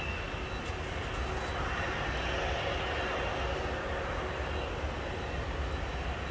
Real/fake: real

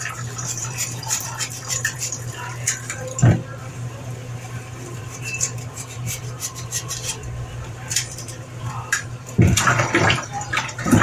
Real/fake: fake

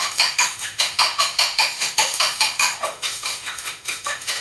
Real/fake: fake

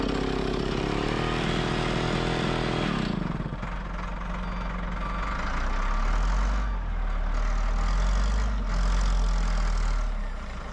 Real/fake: real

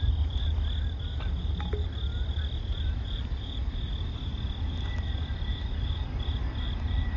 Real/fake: real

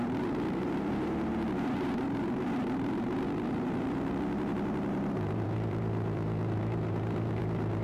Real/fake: fake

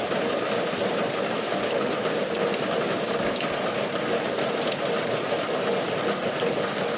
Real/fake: real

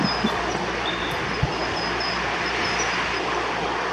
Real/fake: real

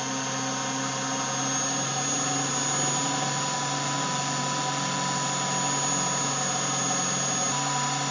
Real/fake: real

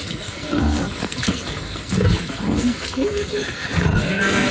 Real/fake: fake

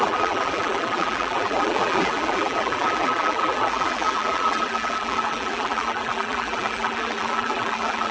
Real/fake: fake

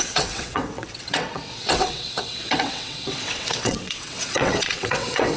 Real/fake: fake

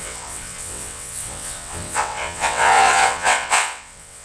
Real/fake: fake